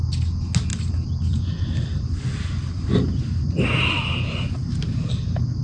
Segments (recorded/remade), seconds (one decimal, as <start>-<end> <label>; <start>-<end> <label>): 0.0-5.6 recorded